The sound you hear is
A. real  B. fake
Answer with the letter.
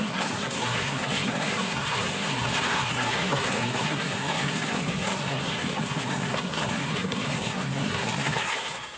B